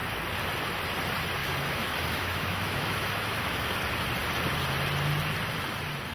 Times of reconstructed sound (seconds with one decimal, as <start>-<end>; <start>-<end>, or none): 1.4-3.8